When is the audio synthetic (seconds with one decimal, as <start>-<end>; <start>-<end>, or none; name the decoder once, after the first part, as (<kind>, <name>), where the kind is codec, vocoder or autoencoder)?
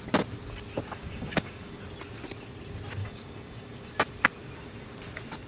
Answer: 1.0-1.8 (codec, DAC); 3.0-3.9